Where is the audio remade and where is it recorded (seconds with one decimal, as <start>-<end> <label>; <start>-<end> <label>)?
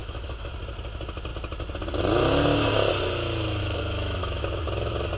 0.0-0.5 remade; 0.5-3.6 recorded; 3.6-4.4 remade; 4.4-5.2 recorded